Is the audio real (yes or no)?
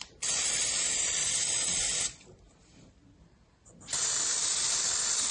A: no